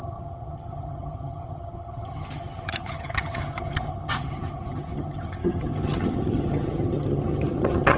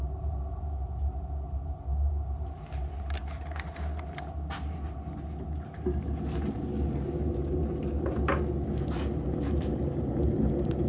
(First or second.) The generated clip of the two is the first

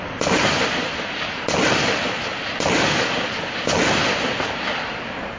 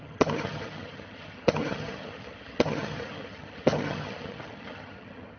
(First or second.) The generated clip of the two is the second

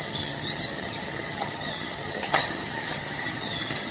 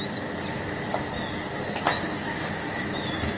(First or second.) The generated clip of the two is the first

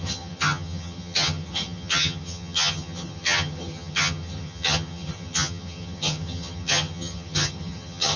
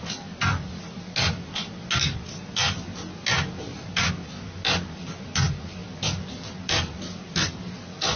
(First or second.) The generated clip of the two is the first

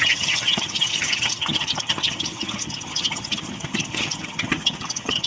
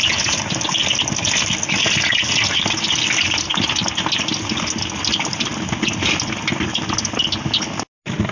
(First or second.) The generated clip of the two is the first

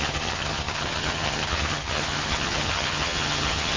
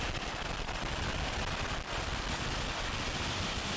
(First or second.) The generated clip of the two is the first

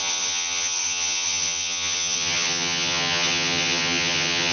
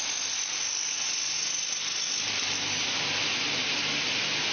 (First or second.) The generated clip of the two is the first